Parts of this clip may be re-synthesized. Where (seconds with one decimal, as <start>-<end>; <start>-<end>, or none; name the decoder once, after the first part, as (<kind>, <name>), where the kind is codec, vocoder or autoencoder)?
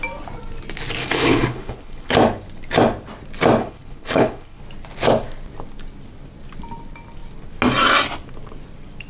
1.0-2.1 (codec, HILCodec); 3.6-4.6